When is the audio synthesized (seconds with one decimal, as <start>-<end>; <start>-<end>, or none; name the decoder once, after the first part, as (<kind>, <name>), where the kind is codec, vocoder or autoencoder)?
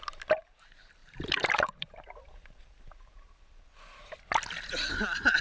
1.0-4.2 (vocoder, BigVGAN v2)